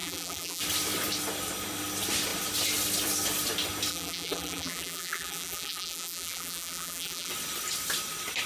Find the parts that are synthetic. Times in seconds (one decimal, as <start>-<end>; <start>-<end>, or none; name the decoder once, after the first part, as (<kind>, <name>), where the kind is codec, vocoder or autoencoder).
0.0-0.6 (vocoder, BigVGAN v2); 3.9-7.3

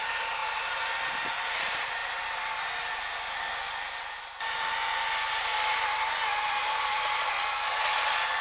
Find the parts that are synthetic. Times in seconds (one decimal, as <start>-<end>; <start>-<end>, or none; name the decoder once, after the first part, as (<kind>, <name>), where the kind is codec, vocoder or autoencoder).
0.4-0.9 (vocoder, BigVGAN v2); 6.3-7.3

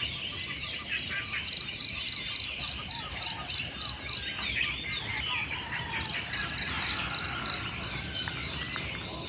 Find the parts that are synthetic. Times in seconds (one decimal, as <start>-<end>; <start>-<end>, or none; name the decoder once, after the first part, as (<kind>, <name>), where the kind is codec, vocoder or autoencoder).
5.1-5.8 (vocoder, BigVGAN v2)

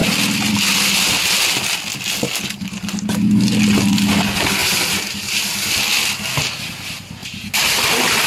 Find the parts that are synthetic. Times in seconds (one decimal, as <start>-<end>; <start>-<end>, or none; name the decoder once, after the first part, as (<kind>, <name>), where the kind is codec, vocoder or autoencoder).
7.2-7.8 (vocoder, BigVGAN v2)